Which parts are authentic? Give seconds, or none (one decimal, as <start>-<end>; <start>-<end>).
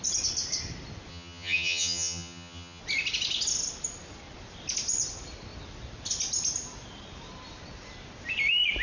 0.0-1.1; 2.8-8.8